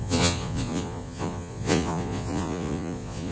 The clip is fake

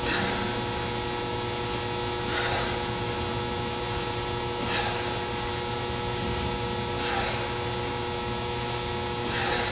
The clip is real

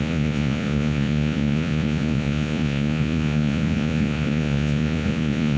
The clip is fake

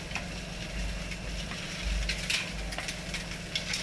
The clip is real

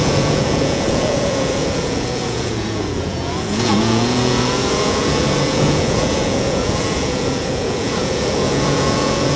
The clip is fake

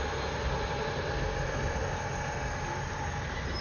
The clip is real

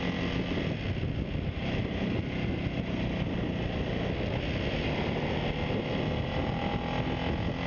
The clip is real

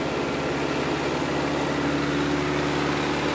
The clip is real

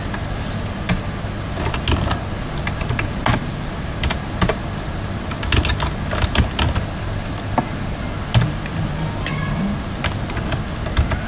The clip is real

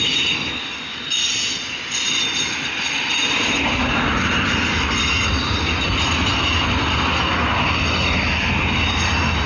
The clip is real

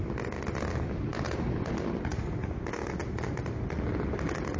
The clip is real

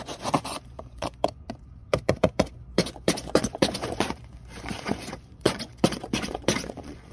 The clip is fake